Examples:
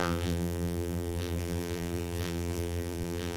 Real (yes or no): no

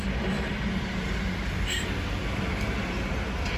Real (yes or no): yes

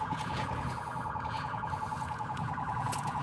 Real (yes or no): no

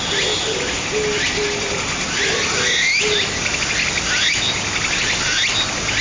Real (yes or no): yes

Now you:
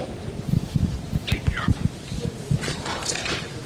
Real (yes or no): no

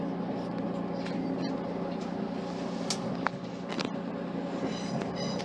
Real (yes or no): yes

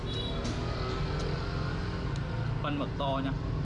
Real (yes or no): yes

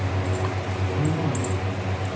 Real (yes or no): yes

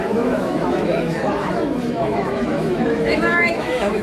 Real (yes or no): no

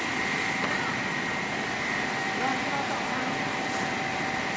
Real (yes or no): no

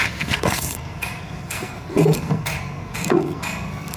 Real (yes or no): no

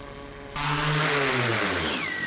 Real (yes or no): yes